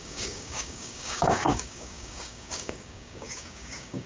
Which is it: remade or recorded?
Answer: remade